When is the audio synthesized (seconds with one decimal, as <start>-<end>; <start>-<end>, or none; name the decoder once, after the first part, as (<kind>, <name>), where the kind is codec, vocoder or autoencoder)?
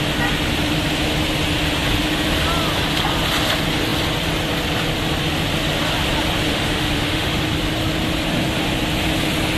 6.5-7.4 (autoencoder, DAC-VAE)